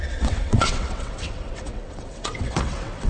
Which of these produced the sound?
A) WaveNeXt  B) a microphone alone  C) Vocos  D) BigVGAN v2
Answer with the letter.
A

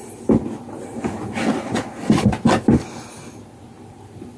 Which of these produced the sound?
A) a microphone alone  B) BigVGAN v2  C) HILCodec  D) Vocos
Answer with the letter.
A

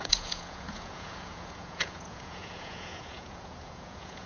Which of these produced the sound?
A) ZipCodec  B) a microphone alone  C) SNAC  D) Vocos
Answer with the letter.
D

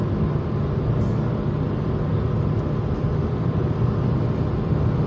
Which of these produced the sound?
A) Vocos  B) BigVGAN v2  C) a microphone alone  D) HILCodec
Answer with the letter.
C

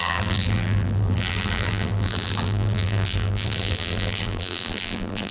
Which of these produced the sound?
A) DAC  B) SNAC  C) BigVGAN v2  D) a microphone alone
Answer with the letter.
C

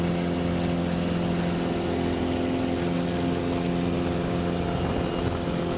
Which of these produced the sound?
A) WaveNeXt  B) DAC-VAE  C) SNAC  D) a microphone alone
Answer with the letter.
D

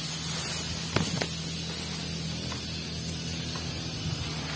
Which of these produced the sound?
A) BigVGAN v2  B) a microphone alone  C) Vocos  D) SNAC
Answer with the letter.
B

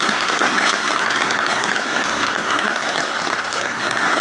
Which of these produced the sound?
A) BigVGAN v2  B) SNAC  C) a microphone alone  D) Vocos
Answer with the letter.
B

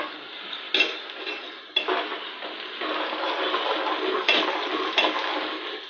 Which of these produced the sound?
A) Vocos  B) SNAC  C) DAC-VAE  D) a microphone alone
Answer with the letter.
D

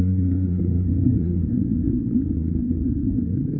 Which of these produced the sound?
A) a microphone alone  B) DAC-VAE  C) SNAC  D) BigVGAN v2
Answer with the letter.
C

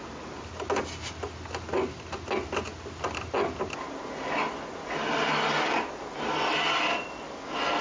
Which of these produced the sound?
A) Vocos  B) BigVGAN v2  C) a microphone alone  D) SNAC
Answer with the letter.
C